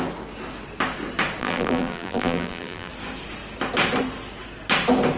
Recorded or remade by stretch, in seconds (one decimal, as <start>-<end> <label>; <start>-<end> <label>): 0.0-1.4 recorded; 1.4-2.9 remade; 2.9-5.2 recorded